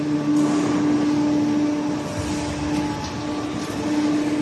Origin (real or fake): real